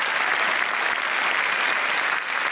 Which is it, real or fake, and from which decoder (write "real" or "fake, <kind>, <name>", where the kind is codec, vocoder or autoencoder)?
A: real